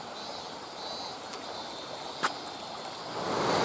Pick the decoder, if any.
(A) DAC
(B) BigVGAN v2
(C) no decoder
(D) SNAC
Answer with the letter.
C